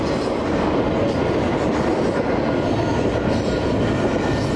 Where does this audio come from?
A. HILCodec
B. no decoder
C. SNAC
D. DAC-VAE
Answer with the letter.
B